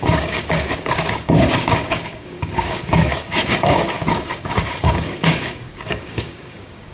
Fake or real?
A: fake